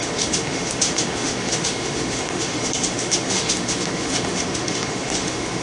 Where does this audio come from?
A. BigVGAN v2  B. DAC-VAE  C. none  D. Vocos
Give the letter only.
B